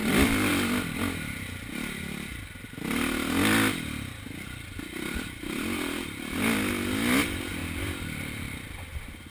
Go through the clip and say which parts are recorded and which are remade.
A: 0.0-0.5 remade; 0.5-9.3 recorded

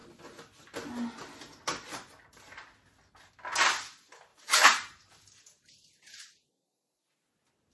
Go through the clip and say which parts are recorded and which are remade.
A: 0.0-4.3 recorded; 4.3-6.5 remade; 6.5-7.7 recorded

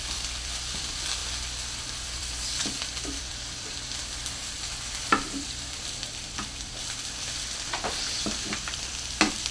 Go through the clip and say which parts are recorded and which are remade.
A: 0.0-1.2 remade; 1.2-2.0 recorded; 2.0-9.5 remade

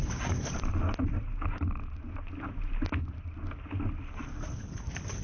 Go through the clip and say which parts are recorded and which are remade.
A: 0.0-0.6 remade; 0.6-5.2 recorded

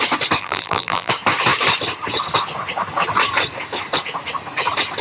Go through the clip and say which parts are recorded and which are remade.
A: 0.0-0.4 recorded; 0.4-1.1 remade; 1.1-5.0 recorded

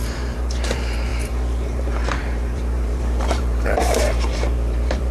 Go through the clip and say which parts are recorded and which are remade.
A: 0.0-5.1 remade